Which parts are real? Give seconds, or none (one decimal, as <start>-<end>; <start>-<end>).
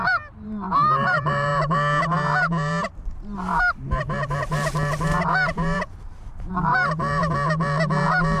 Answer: none